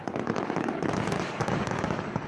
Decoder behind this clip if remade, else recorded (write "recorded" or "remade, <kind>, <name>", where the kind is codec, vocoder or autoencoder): remade, codec, DAC